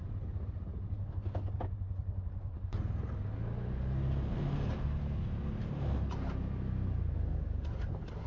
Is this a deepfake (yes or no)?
no